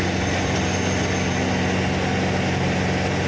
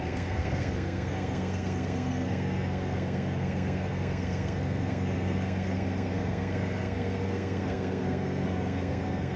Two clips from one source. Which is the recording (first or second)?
first